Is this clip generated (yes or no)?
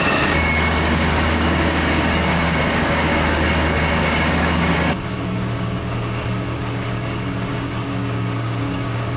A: yes